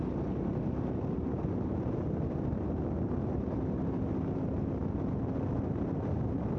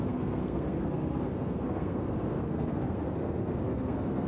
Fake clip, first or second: second